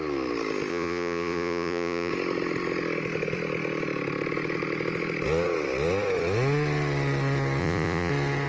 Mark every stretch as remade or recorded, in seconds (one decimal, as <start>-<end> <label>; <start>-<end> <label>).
0.0-0.7 recorded; 0.7-2.1 remade; 2.1-7.6 recorded; 7.6-8.1 remade; 8.1-8.5 recorded